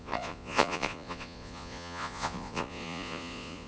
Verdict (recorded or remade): remade